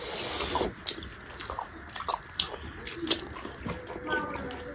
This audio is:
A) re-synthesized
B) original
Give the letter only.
B